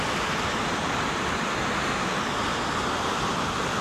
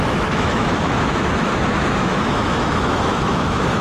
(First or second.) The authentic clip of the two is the first